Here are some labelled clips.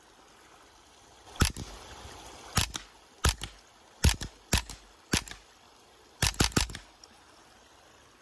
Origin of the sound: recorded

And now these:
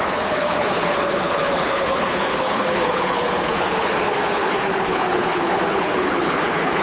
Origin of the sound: remade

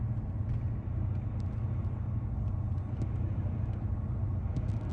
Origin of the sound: recorded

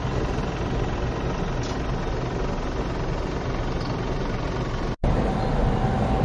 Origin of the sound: recorded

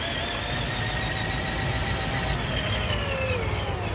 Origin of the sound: recorded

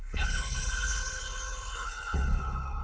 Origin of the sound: remade